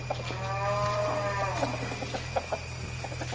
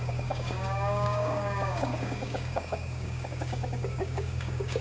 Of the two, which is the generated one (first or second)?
second